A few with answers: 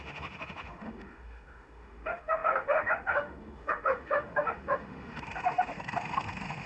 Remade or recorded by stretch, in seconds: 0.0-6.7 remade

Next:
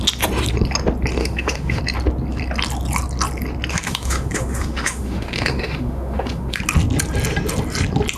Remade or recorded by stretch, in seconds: 0.0-1.2 recorded; 1.2-1.8 remade; 1.8-3.7 recorded; 3.7-6.6 remade; 6.6-8.2 recorded

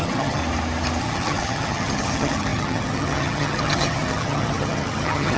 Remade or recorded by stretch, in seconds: 0.0-0.4 remade; 0.4-1.0 recorded; 1.0-5.4 remade

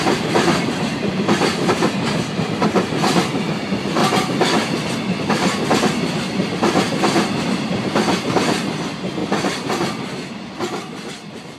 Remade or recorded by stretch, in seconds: 0.0-4.0 remade; 4.0-5.2 recorded; 5.2-11.6 remade

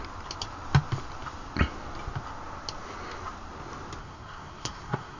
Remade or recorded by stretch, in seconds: 0.0-4.0 recorded; 4.0-5.2 remade

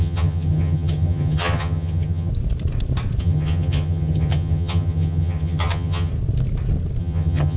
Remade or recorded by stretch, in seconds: 0.0-2.3 remade; 2.3-3.2 recorded; 3.2-6.1 remade; 6.1-7.0 recorded; 7.0-7.6 remade

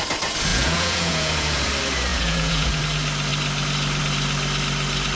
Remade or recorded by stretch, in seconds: 0.0-0.5 recorded; 0.5-1.7 remade; 1.7-2.1 recorded; 2.1-2.8 remade; 2.8-5.2 recorded